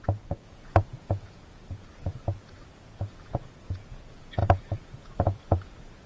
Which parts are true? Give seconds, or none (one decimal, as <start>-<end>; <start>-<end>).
none